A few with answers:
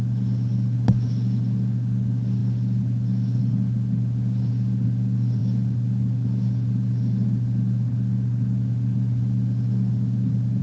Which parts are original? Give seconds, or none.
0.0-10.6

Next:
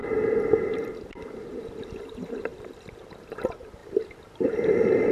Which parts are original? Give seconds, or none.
none

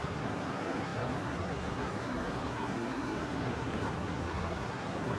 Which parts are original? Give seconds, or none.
none

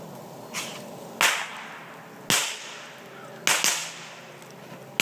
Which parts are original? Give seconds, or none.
0.0-5.0

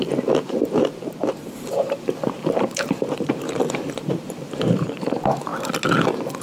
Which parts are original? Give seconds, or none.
5.5-6.4